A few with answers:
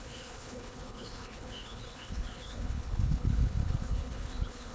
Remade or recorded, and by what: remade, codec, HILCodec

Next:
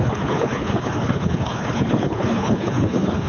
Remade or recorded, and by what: remade, codec, HILCodec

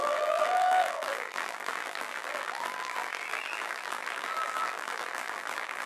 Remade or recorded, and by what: remade, vocoder, BigVGAN v2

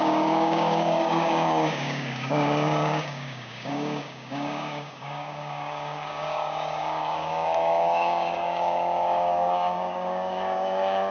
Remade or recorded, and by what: remade, codec, DAC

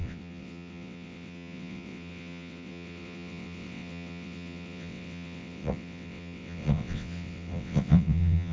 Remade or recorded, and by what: remade, vocoder, WaveNeXt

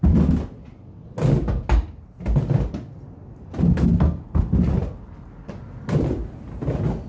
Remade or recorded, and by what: recorded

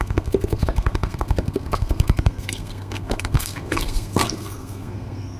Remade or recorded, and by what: remade, codec, SNAC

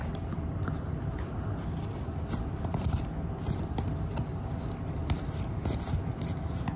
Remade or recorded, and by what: recorded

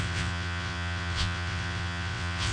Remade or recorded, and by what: remade, vocoder, WaveNeXt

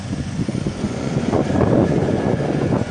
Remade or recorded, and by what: remade, vocoder, Vocos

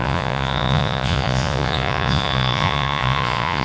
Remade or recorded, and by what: remade, vocoder, Vocos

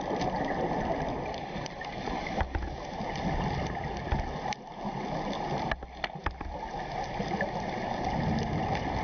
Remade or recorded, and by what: recorded